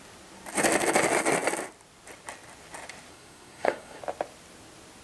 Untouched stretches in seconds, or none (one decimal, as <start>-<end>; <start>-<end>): 0.0-3.1; 4.0-5.0

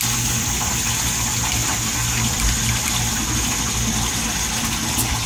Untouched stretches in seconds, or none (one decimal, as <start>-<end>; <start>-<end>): 0.0-5.3